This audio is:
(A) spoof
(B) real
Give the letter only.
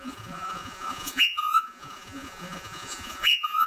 A